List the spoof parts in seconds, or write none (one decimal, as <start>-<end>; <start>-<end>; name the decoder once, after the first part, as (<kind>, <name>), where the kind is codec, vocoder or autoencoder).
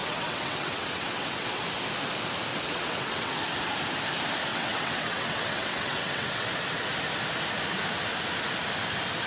0.0-1.6 (vocoder, WaveNeXt); 2.5-3.3; 4.5-6.5